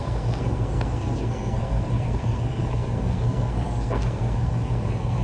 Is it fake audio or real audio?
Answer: fake